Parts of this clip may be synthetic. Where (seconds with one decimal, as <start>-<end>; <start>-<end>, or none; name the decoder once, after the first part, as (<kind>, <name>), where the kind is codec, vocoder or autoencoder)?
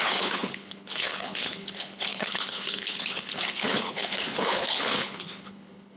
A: 0.0-6.0 (codec, HILCodec)